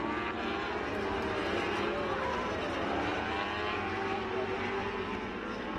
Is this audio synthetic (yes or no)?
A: no